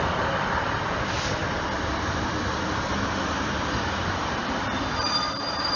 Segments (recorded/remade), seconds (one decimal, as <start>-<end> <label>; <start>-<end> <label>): 0.0-5.8 recorded